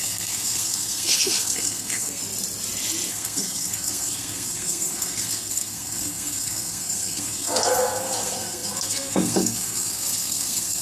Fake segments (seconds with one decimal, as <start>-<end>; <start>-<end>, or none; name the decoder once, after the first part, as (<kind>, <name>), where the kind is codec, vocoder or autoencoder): 0.0-2.2 (codec, SNAC); 3.1-10.8